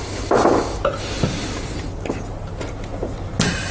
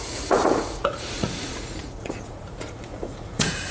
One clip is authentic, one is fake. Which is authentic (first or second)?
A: first